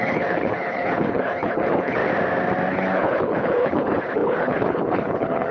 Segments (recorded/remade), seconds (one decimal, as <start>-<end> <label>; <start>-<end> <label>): 0.0-2.0 remade; 2.0-2.7 recorded; 2.7-5.5 remade